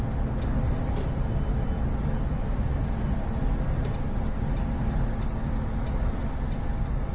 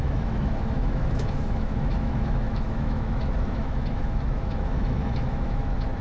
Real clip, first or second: first